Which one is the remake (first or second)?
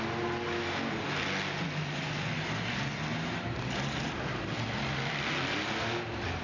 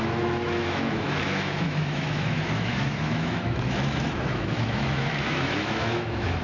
second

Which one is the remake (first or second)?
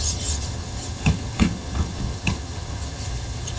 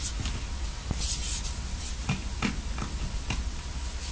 first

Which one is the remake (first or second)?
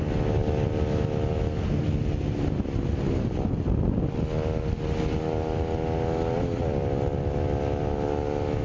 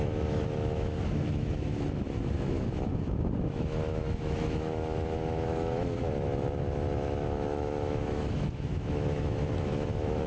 second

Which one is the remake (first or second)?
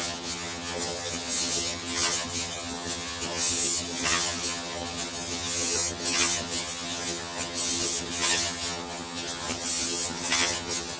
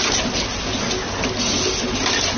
first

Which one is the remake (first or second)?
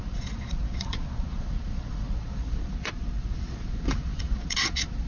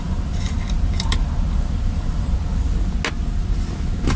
first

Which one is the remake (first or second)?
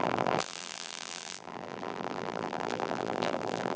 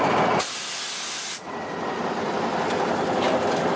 first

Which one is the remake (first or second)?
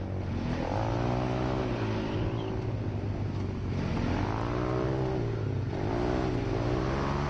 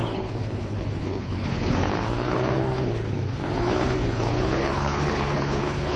second